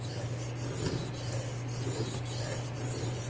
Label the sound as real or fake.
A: real